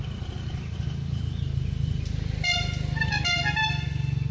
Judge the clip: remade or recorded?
recorded